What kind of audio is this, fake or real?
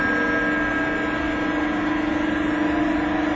real